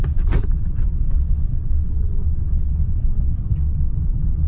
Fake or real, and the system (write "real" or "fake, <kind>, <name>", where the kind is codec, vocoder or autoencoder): fake, vocoder, WaveNeXt